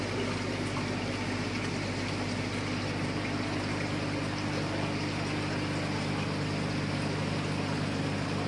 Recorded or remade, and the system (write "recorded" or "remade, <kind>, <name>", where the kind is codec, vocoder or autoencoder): recorded